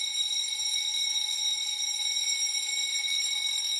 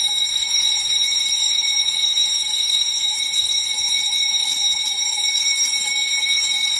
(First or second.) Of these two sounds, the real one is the first